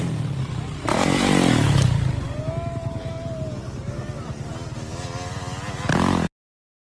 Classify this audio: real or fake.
real